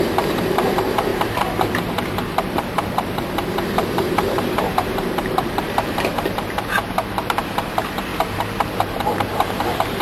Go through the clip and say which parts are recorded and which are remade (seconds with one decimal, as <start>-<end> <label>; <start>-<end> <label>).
0.0-10.0 remade